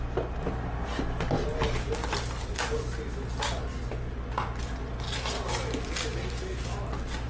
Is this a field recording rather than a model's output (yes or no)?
yes